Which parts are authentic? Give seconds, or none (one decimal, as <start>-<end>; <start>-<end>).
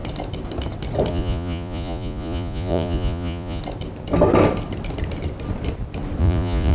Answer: 0.0-1.1; 3.6-6.2